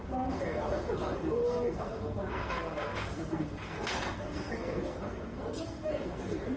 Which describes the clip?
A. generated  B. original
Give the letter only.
A